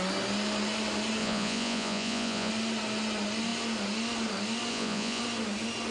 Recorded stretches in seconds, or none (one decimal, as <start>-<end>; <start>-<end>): 0.0-1.2; 2.5-4.7; 5.2-5.9